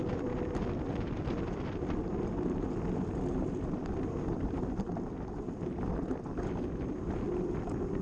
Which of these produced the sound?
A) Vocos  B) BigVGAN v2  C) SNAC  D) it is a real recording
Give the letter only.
D